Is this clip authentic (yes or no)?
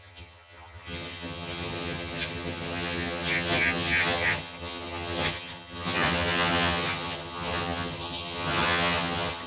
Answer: no